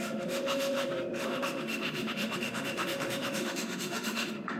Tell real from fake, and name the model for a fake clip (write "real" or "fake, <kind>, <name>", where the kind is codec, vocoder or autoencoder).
fake, autoencoder, DAC-VAE